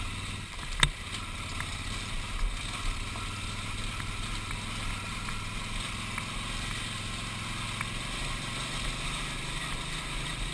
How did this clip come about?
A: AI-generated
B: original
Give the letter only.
B